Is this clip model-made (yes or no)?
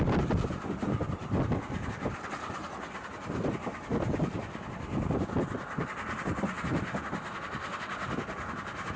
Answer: no